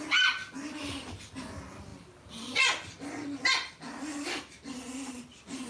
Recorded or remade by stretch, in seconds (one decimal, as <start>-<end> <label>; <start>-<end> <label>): 0.0-5.7 recorded